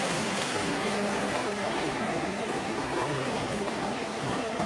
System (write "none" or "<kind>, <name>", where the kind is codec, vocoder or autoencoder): codec, SNAC